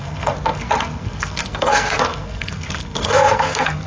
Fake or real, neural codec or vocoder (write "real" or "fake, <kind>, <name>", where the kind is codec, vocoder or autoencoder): fake, codec, SNAC